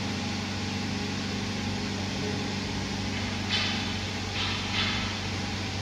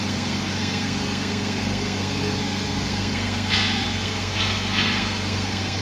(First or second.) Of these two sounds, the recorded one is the first